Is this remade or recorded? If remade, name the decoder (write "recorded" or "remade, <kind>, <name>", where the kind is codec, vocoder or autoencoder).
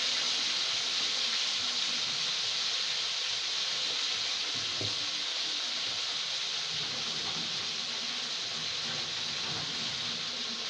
recorded